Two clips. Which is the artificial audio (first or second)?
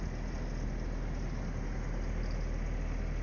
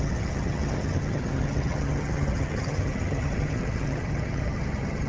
second